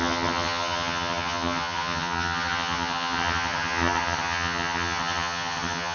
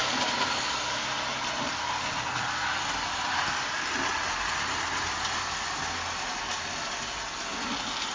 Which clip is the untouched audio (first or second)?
second